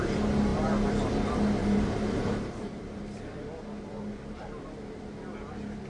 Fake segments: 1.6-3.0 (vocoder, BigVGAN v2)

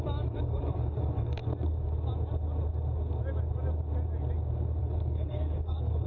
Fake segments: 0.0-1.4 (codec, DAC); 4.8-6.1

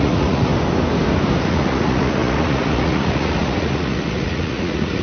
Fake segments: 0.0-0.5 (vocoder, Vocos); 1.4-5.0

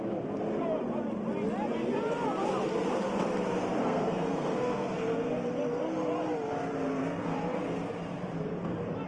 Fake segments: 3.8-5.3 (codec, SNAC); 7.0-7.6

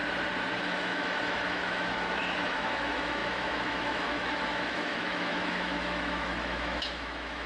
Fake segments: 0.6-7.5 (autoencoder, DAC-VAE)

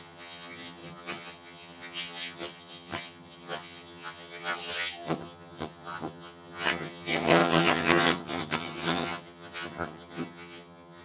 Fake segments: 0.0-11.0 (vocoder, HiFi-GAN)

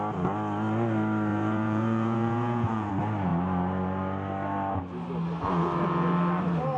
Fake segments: 1.3-2.9 (vocoder, Vocos)

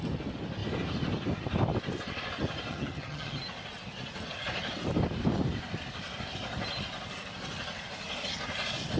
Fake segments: 2.7-3.4 (vocoder, HiFi-GAN)